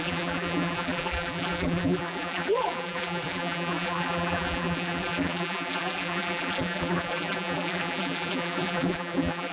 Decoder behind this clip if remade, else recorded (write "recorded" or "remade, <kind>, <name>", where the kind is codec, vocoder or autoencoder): remade, vocoder, BigVGAN v2